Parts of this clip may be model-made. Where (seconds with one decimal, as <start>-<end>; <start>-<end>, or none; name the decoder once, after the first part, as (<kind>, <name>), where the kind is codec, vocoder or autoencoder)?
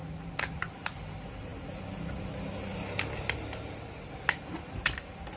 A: none